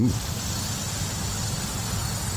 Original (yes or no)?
yes